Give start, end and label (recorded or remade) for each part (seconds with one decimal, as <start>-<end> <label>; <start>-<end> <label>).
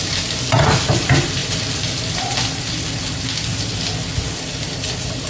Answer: 0.0-5.3 recorded